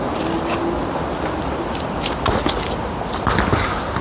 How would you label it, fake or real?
real